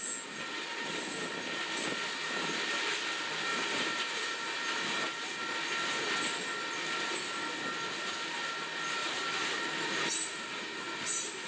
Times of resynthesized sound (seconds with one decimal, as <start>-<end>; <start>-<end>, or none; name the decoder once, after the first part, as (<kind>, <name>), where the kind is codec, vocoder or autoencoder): 0.7-1.3 (vocoder, BigVGAN v2); 3.5-5.4; 9.0-11.0